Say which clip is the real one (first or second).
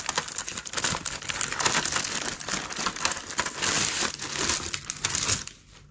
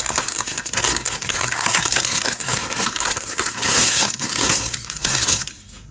first